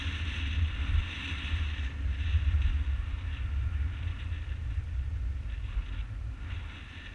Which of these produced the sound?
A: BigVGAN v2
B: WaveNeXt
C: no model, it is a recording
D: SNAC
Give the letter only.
C